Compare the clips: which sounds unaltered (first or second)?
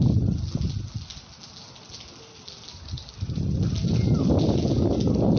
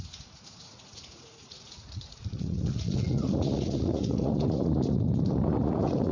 first